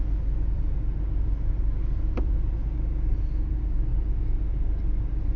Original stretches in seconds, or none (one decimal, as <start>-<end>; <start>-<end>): 0.0-5.4